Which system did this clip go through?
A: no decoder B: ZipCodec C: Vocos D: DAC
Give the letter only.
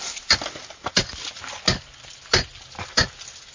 A